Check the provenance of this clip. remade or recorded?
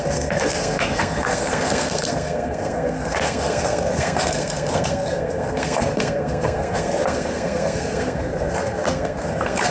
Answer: remade